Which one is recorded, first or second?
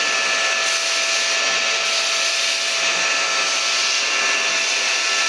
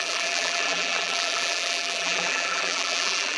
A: first